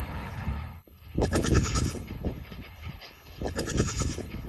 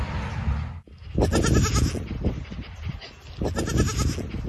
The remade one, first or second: first